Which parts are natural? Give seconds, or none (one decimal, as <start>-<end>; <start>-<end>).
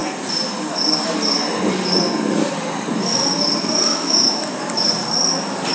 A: 0.0-3.9; 4.6-5.7